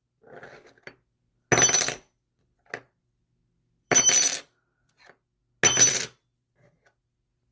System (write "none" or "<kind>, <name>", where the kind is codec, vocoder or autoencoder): none